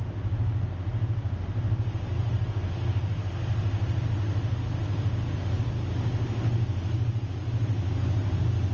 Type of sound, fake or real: real